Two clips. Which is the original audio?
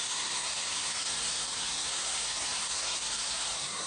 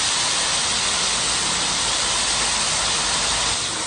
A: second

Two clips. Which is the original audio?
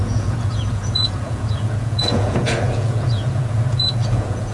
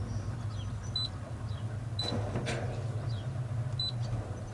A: second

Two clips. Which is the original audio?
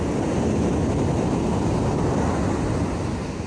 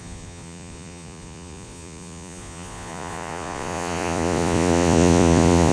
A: first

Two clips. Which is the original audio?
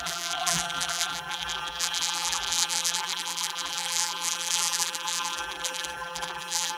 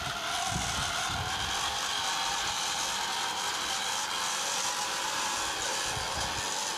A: second